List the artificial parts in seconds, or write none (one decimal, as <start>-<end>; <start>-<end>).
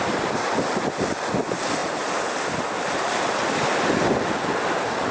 none